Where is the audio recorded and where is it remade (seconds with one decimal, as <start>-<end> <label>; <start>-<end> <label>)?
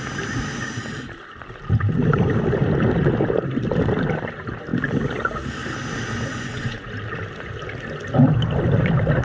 0.0-6.3 recorded; 6.3-6.9 remade; 6.9-9.2 recorded